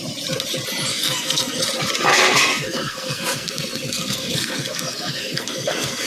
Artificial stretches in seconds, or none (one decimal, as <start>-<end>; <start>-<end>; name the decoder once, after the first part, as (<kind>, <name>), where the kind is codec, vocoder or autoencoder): 0.9-1.6 (codec, SNAC); 2.1-6.1

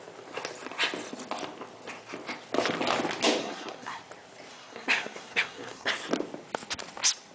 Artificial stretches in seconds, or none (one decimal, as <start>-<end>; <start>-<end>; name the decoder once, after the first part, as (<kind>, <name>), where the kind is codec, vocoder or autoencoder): 3.4-4.0 (codec, SNAC); 4.5-5.9

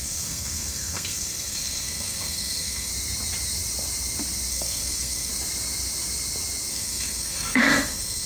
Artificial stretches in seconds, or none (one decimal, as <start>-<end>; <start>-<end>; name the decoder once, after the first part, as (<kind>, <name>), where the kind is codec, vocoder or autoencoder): 0.0-2.9 (codec, SNAC); 4.5-5.3; 6.7-8.3

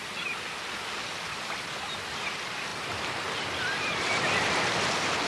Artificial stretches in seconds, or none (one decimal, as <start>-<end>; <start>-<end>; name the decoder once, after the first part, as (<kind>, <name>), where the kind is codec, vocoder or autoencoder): none

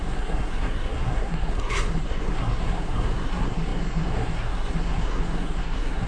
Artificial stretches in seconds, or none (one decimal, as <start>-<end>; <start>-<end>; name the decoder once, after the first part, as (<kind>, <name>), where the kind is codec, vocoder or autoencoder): 0.0-6.1 (codec, SNAC)

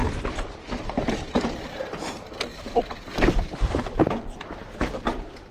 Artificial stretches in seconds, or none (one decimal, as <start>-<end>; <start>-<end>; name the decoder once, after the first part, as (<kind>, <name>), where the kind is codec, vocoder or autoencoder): none

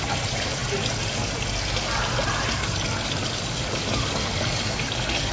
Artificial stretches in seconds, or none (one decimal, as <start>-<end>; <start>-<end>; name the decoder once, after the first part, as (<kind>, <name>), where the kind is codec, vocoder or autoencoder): none

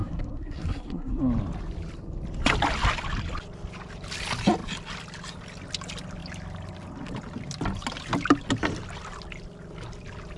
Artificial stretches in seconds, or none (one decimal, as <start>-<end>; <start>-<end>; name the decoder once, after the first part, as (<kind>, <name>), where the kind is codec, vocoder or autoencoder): 0.0-1.2 (codec, SNAC)